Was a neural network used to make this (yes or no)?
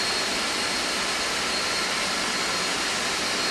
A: no